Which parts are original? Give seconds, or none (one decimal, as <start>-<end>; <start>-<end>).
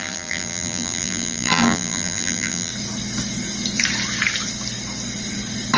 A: 2.7-5.8